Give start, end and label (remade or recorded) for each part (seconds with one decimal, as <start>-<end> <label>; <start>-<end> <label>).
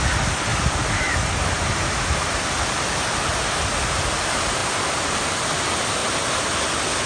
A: 0.0-0.5 recorded; 0.5-2.4 remade; 2.4-4.6 recorded; 4.6-5.4 remade; 5.4-6.0 recorded; 6.0-6.5 remade; 6.5-7.1 recorded